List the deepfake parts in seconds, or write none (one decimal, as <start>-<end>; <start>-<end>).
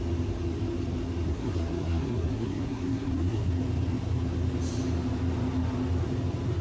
1.3-3.5